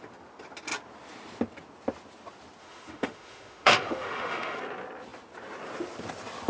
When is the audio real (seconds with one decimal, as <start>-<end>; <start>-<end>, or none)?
0.0-2.6; 4.6-6.5